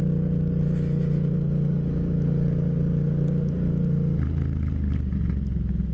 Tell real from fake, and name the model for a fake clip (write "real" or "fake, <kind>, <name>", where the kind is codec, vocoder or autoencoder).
real